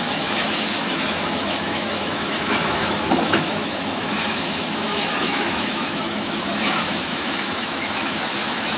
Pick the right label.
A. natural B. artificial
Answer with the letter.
B